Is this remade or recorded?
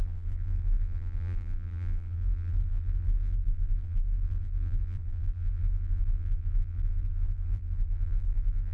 remade